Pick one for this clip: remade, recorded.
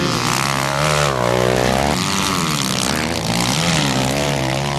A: recorded